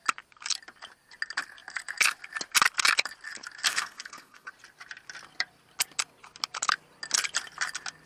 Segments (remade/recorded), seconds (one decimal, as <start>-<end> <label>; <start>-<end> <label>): 0.0-3.7 recorded; 3.7-4.5 remade; 4.5-8.1 recorded